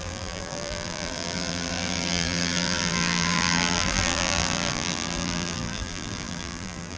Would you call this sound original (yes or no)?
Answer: no